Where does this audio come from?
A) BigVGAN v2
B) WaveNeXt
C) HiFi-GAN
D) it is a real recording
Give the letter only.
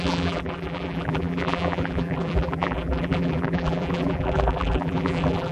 A